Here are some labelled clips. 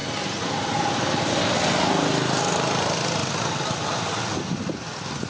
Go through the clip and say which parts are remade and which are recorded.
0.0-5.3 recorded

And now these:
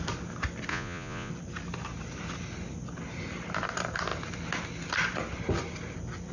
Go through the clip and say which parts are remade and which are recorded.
0.0-0.7 recorded; 0.7-1.3 remade; 1.3-6.3 recorded

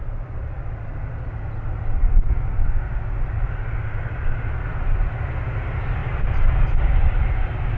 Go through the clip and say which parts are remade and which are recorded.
0.0-7.8 recorded

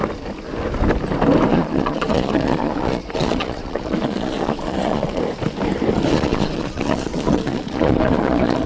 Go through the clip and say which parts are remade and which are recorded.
0.0-1.5 recorded; 1.5-5.2 remade; 5.2-6.1 recorded; 6.1-8.7 remade

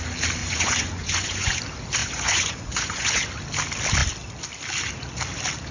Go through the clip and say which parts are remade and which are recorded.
0.0-0.4 recorded; 0.4-1.6 remade; 1.6-2.0 recorded; 2.0-3.3 remade; 3.3-5.7 recorded

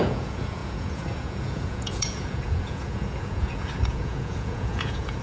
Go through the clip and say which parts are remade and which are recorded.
0.0-5.2 remade

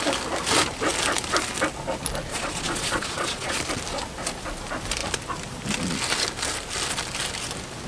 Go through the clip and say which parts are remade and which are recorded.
0.0-2.3 recorded; 2.3-3.6 remade; 3.6-7.9 recorded